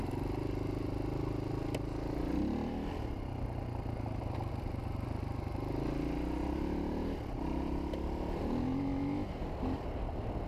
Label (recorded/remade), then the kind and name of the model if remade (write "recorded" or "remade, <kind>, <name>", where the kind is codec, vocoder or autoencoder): recorded